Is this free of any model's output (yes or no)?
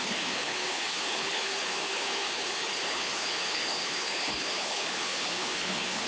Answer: no